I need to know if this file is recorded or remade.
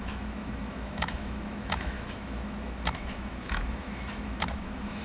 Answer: remade